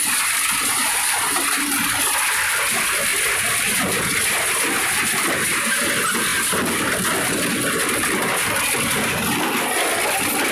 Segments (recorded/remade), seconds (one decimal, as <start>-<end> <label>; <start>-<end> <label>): 0.0-0.8 recorded; 0.8-1.7 remade; 1.7-10.5 recorded